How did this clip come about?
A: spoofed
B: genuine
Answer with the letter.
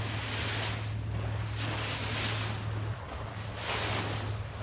B